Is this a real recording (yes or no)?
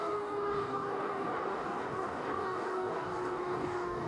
no